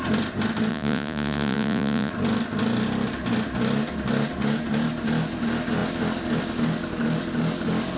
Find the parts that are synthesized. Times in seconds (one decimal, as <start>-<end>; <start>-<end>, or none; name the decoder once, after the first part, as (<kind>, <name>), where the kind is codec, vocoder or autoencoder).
0.7-2.1 (vocoder, Vocos)